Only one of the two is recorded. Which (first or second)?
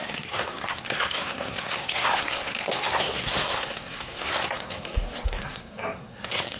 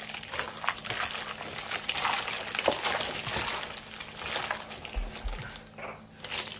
second